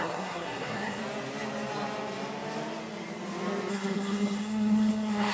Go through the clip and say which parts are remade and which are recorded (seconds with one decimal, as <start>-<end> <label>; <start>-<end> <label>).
0.0-1.0 remade; 1.0-3.7 recorded; 3.7-5.3 remade